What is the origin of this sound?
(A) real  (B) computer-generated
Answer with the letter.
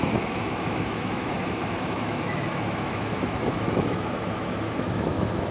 B